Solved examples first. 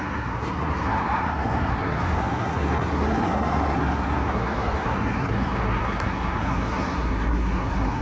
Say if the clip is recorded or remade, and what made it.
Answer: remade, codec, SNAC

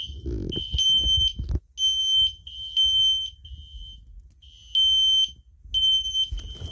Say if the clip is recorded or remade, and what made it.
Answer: recorded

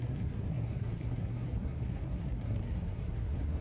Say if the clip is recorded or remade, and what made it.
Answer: remade, codec, SNAC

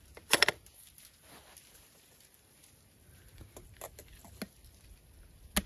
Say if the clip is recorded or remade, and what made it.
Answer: recorded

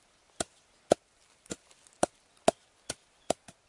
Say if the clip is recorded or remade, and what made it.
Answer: recorded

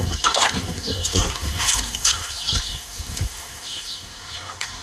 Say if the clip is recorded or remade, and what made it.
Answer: remade, codec, SNAC